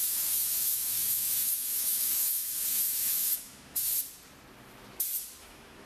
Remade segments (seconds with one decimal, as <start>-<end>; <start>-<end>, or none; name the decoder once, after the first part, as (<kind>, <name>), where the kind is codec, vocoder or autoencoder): 0.0-3.9 (autoencoder, DAC-VAE); 5.4-5.9